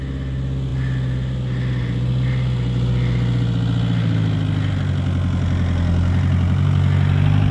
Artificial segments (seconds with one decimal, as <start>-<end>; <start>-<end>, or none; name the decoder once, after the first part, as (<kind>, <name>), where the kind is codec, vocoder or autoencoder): none